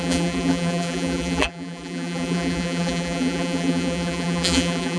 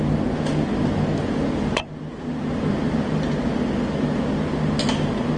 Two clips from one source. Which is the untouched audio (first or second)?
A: second